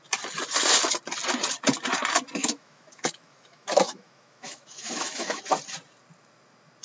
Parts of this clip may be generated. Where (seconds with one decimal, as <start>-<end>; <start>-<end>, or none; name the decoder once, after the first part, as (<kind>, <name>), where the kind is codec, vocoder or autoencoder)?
2.4-5.4 (autoencoder, DAC-VAE)